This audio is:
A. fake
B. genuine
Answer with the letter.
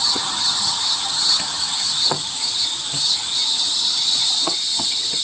A